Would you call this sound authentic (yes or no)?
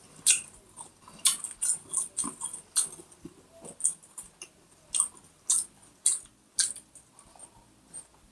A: yes